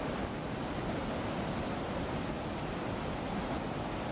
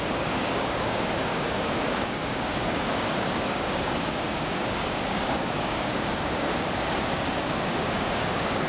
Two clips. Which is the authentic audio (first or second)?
first